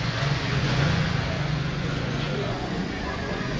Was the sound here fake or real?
fake